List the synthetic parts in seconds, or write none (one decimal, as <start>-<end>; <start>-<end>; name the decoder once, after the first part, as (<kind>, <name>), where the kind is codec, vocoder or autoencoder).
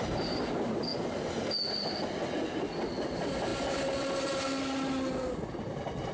none